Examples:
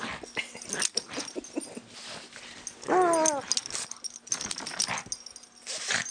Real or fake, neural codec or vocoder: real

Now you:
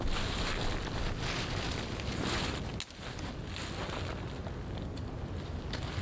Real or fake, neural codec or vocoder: real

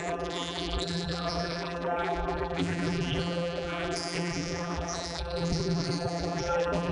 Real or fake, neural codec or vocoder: fake, vocoder, BigVGAN v2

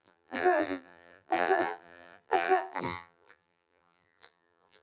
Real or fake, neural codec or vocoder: fake, vocoder, BigVGAN v2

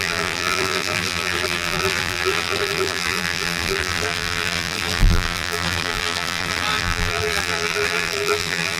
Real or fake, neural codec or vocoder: fake, vocoder, BigVGAN v2